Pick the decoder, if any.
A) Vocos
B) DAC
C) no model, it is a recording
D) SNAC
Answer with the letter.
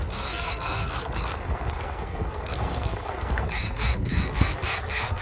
D